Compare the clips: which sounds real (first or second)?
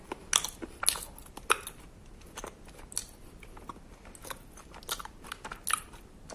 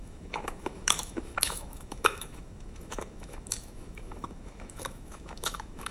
first